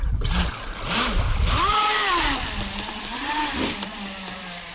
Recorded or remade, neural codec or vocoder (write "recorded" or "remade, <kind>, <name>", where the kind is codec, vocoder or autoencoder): recorded